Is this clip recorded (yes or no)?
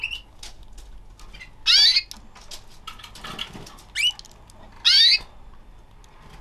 yes